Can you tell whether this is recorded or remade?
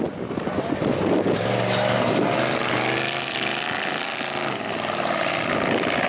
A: recorded